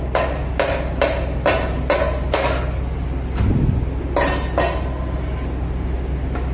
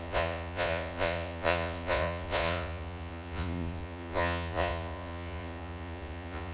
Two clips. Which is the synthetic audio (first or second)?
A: second